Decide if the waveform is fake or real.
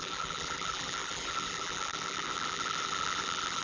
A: fake